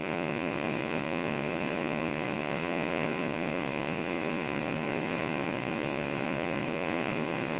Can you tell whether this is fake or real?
fake